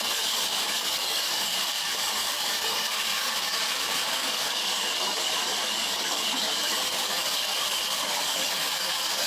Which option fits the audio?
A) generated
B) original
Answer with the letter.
A